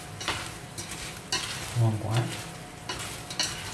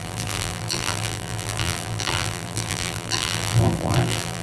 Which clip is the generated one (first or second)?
second